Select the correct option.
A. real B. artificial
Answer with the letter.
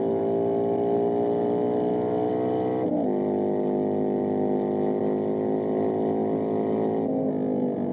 A